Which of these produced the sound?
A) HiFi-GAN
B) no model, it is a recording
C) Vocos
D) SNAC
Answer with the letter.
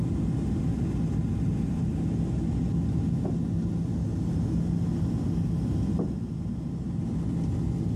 B